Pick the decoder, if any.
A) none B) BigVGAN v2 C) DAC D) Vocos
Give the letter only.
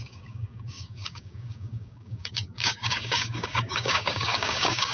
C